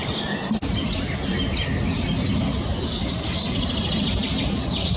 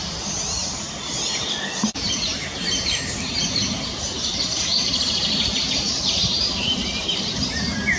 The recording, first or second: first